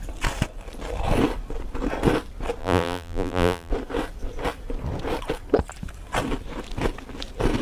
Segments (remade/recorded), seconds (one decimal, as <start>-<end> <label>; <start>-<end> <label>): 0.0-2.6 recorded; 2.6-3.7 remade; 3.7-7.6 recorded